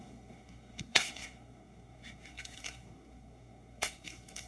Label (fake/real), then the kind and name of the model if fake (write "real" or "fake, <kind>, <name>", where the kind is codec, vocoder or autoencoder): fake, codec, SNAC